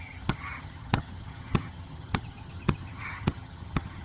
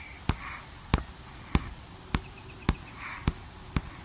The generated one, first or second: first